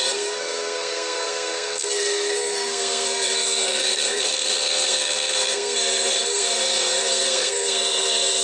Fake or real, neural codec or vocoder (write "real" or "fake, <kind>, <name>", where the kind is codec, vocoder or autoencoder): fake, codec, SNAC